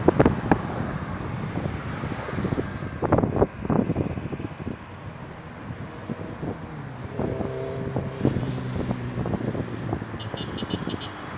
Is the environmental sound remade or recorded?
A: recorded